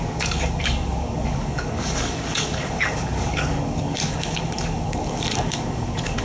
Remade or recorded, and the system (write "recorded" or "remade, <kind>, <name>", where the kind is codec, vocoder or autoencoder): remade, codec, DAC